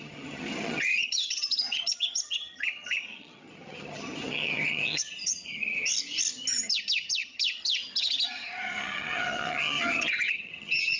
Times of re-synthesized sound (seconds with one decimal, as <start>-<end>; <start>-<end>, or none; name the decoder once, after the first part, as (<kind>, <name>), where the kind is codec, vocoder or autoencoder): 0.0-5.9 (vocoder, HiFi-GAN); 6.5-11.0

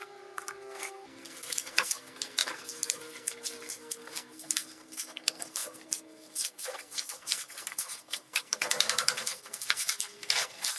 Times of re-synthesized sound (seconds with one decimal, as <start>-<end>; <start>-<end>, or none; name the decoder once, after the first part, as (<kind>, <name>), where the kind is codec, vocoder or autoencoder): 0.0-10.8 (codec, SNAC)

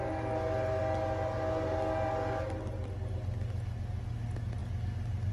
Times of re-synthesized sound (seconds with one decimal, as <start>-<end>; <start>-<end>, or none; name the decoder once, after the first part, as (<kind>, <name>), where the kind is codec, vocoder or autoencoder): none

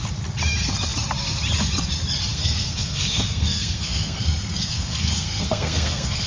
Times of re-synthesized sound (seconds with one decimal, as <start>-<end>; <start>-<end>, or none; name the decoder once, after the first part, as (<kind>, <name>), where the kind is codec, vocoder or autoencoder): 2.3-6.3 (codec, SNAC)